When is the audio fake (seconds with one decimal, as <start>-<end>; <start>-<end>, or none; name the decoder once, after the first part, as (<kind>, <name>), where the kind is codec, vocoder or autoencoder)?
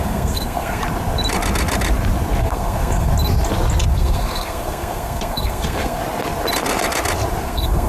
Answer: 0.0-0.8 (codec, SNAC); 2.4-3.1; 3.9-6.0; 7.4-7.9